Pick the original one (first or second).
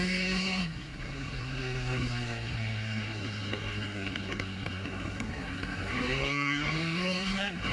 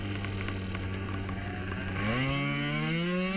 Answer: second